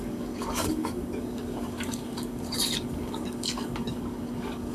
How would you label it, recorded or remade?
remade